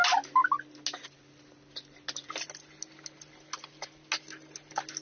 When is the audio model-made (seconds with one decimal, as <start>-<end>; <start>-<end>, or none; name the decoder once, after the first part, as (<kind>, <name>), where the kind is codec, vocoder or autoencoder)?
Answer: none